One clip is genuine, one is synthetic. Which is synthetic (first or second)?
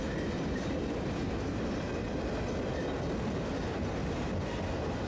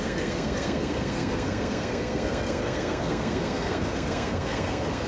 second